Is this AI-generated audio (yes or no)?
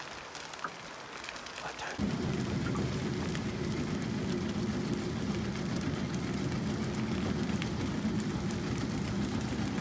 no